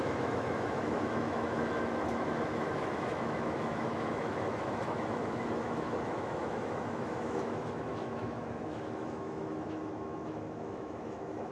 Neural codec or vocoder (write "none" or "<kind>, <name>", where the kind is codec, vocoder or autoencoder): autoencoder, DAC-VAE